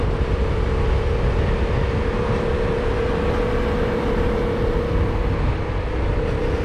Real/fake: real